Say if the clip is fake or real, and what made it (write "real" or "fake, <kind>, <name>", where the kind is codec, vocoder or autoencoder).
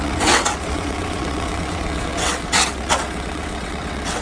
fake, vocoder, WaveNeXt